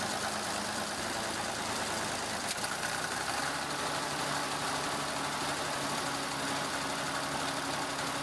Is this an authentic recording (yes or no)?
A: yes